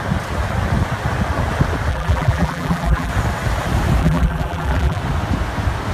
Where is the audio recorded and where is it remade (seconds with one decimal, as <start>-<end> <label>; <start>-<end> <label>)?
0.0-1.9 recorded; 1.9-3.1 remade; 3.1-4.0 recorded; 4.0-5.0 remade; 5.0-5.9 recorded